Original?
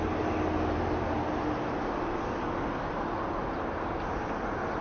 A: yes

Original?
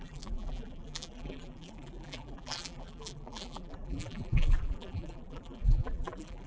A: no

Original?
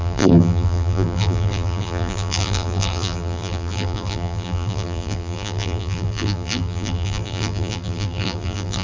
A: no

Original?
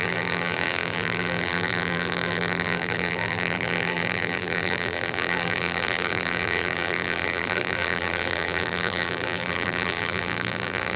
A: no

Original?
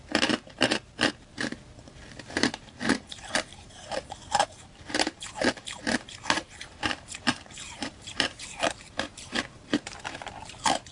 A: no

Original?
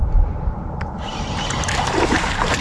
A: no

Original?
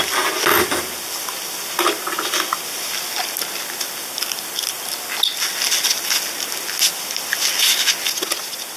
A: yes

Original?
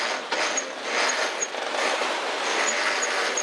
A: yes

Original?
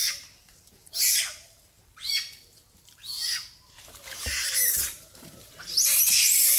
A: no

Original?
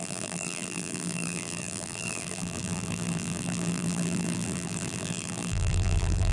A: no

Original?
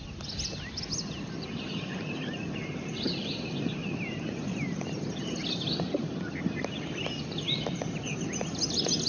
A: yes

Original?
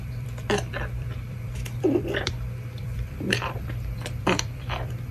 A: no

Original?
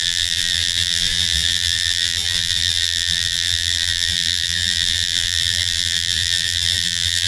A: no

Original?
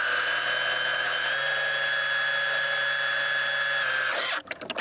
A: yes